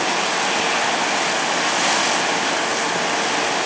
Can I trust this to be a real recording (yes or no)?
yes